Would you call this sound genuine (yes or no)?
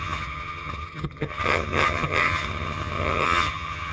no